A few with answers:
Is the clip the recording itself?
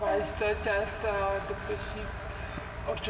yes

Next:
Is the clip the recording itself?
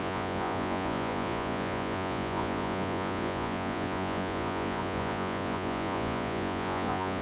no